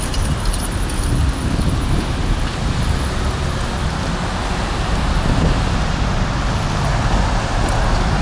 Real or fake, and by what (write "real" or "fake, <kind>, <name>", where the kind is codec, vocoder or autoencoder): real